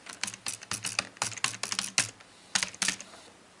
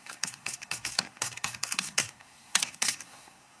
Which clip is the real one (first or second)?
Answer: first